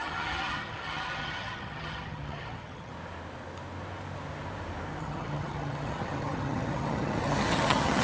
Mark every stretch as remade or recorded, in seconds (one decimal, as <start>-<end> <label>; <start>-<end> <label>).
0.0-2.9 remade; 2.9-5.0 recorded; 5.0-8.0 remade